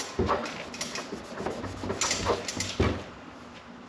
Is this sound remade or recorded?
recorded